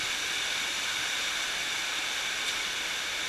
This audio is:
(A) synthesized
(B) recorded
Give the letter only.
B